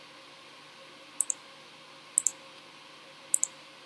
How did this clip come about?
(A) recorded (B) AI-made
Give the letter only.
A